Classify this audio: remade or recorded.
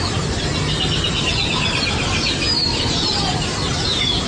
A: recorded